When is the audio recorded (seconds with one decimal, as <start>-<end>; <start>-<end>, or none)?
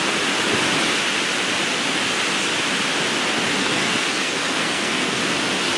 0.0-3.6; 5.2-5.8